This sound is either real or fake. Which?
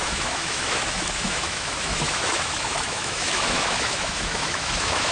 fake